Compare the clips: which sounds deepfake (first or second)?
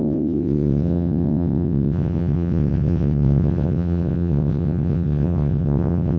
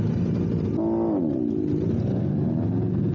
first